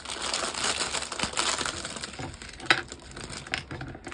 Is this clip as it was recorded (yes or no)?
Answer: yes